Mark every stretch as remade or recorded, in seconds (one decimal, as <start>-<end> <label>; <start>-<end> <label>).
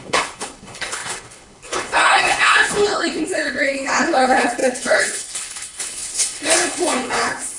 0.0-7.6 remade